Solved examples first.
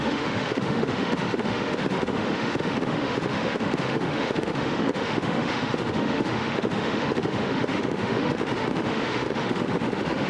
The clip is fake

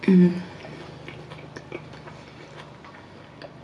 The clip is real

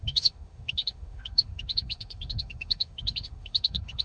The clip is fake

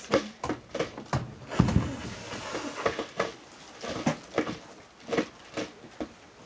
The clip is real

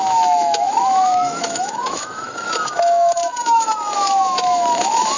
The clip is fake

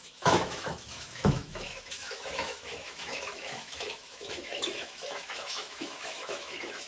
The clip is fake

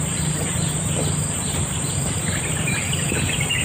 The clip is real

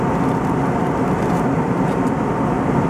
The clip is real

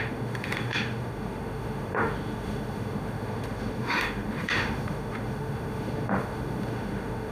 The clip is fake